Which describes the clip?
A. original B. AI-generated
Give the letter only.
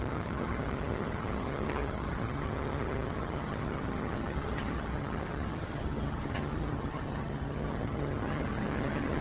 B